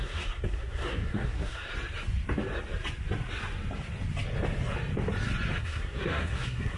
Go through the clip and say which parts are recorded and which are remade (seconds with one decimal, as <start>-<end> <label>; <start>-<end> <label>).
0.0-1.7 remade; 1.7-5.6 recorded; 5.6-6.8 remade

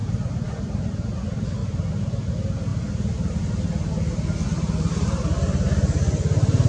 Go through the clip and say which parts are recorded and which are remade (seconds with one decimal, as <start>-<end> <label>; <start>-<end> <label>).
0.0-0.9 remade; 0.9-1.6 recorded; 1.6-2.3 remade; 2.3-6.7 recorded

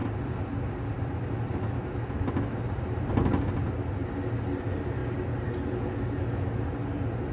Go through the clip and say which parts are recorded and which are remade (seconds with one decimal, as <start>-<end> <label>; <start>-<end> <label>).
0.0-7.3 recorded